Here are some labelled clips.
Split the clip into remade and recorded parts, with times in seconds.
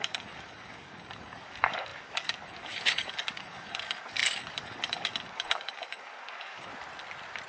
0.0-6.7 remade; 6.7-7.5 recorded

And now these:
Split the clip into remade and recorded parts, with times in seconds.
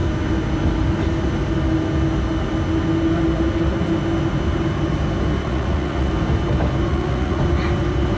0.0-5.4 recorded; 5.4-6.1 remade; 6.1-6.9 recorded; 6.9-7.4 remade; 7.4-8.2 recorded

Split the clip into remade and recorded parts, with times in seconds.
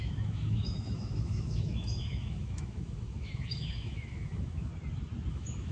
0.0-4.7 remade; 4.7-5.3 recorded; 5.3-5.7 remade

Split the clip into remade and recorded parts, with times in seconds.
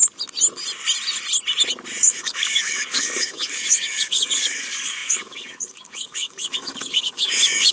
0.0-2.0 recorded; 2.0-7.7 remade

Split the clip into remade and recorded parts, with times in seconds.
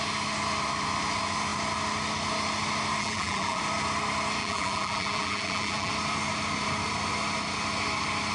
0.0-3.0 recorded; 3.0-3.6 remade; 3.6-4.4 recorded; 4.4-5.9 remade; 5.9-8.3 recorded